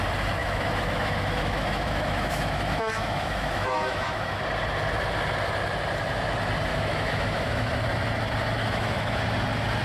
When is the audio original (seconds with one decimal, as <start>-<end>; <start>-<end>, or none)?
0.0-0.4; 4.4-6.7; 7.7-8.6; 9.2-9.8